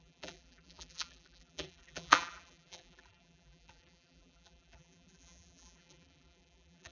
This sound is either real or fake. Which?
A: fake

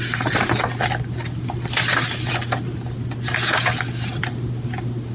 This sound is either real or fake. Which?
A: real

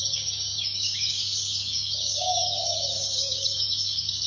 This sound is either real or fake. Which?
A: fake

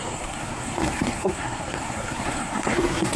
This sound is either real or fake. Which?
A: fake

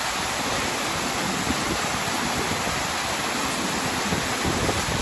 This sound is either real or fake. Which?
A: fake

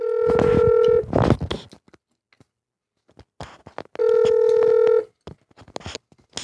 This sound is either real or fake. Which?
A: real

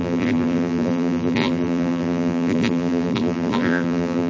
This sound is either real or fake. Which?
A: fake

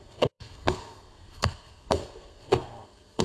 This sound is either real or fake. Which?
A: fake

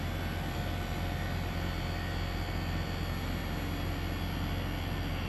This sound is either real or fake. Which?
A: real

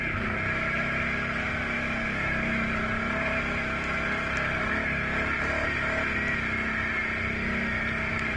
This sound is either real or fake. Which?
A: real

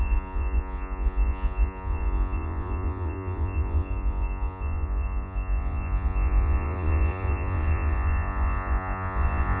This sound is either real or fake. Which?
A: fake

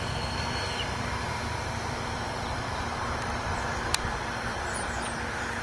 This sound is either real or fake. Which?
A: fake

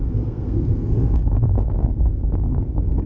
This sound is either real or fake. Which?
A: fake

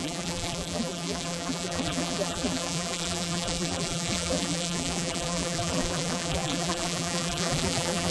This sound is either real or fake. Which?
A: fake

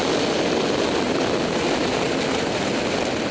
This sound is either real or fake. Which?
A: real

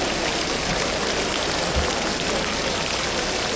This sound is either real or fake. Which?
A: real